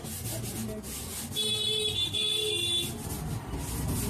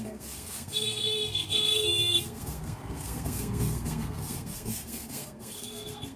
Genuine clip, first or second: first